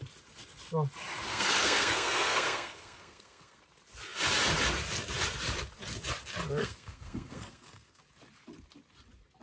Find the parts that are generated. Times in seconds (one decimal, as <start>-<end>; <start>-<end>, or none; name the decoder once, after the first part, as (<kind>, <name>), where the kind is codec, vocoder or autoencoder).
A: 1.3-3.6 (codec, SNAC); 6.6-8.0